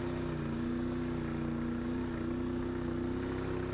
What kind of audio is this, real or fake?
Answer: real